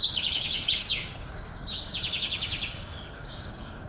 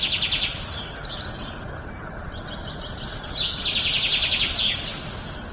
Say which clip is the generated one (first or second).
first